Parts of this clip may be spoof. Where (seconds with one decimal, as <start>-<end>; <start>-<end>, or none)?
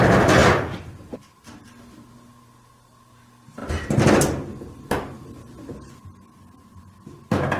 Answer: none